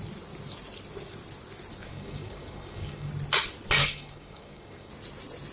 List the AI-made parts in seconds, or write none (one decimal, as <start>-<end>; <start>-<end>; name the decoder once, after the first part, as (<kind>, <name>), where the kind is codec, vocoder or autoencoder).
1.8-3.1 (codec, DAC); 3.8-4.9